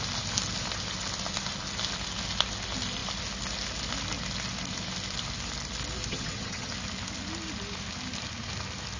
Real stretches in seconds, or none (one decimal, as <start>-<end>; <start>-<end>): 0.0-6.1; 6.7-9.0